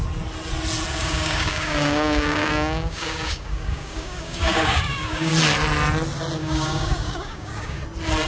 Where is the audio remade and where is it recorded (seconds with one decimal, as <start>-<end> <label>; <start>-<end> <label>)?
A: 0.0-1.0 recorded; 1.0-5.3 remade; 5.3-6.4 recorded; 6.4-7.8 remade; 7.8-8.3 recorded